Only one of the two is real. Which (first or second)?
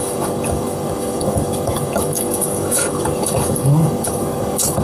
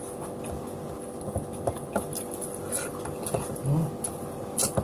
second